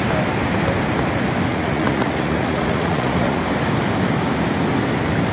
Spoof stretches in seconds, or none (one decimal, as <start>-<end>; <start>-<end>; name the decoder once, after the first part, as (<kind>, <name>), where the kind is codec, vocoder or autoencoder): 1.5-3.4 (vocoder, Vocos)